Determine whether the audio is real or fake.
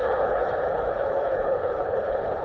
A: fake